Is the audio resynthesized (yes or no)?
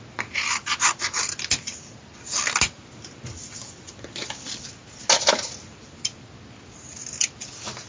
no